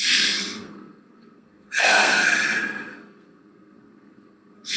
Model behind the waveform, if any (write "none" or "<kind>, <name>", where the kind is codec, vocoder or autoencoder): codec, SNAC